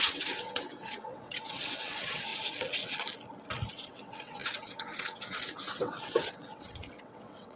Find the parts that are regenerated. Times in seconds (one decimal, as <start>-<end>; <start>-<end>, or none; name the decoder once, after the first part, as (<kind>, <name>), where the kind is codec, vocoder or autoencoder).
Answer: 0.0-2.3 (vocoder, WaveNeXt); 3.7-7.6